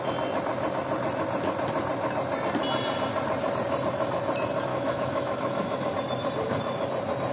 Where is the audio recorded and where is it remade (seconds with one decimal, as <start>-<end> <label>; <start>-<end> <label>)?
0.0-4.7 recorded; 4.7-5.9 remade; 5.9-7.3 recorded